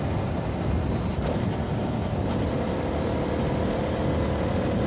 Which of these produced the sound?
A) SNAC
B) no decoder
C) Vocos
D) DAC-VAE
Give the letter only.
B